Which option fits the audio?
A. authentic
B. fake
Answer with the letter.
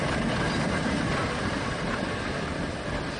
A